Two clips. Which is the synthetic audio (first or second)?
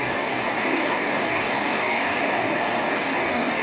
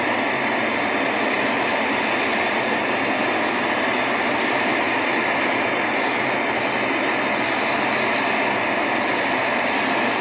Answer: first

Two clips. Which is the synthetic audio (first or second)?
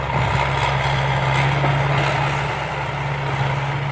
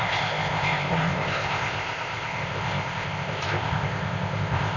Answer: second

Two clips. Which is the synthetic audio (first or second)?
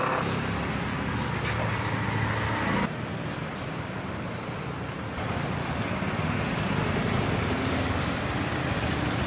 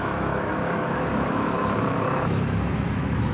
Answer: second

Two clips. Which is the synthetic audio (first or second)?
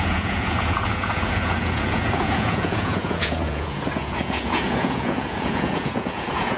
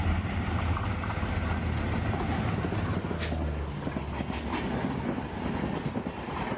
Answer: first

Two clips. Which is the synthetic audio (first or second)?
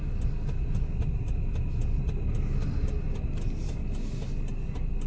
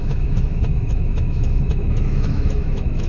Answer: second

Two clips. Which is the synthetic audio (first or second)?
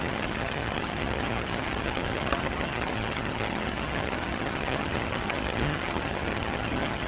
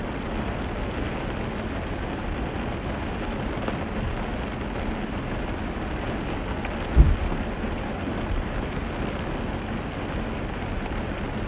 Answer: first